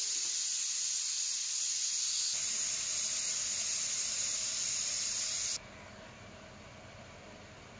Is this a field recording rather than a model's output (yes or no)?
yes